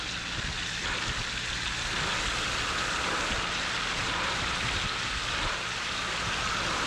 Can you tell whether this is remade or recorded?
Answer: recorded